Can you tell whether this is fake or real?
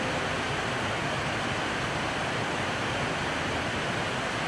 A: real